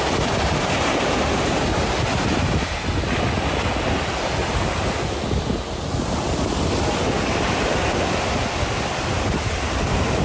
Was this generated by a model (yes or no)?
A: no